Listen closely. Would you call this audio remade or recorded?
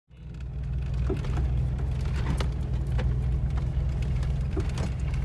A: recorded